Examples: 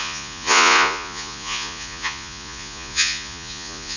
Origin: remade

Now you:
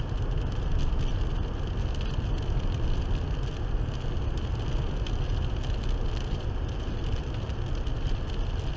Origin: recorded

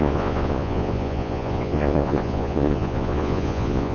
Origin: remade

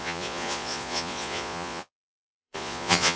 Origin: remade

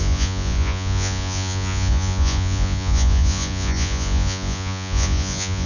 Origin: remade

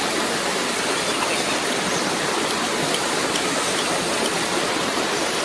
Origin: recorded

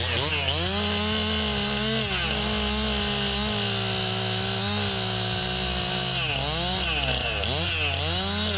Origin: recorded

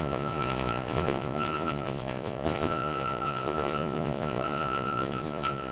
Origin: remade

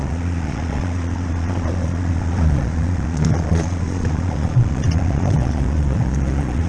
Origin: remade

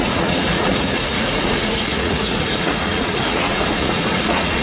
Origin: remade